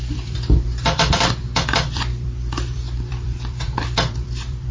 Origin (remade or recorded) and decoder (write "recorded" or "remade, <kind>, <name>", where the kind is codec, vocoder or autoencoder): remade, vocoder, BigVGAN v2